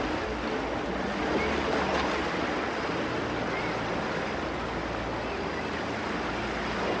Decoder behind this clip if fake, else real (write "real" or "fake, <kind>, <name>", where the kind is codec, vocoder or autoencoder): real